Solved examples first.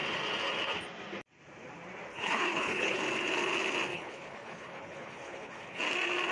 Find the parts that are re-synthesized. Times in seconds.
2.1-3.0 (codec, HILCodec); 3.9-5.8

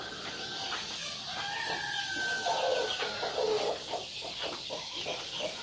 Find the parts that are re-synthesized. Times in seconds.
0.0-1.3 (codec, DAC); 3.0-3.8; 4.7-5.6

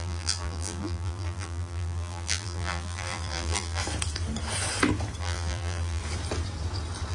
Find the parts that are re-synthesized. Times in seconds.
0.0-3.8 (vocoder, BigVGAN v2); 5.2-6.0

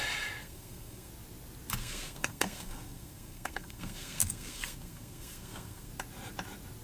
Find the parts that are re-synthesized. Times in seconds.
0.4-1.1 (codec, SNAC); 1.8-5.9

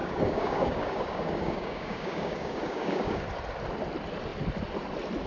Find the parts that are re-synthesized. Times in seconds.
0.0-3.2 (codec, DAC)

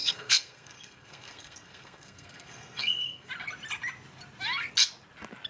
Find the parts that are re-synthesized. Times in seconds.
0.0-3.3 (codec, SNAC)

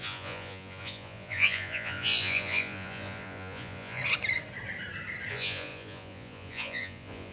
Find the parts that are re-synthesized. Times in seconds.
0.0-4.0 (vocoder, Vocos); 5.3-7.3